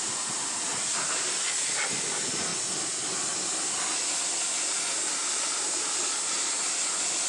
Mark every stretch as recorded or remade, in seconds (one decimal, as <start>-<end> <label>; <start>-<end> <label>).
0.0-7.3 recorded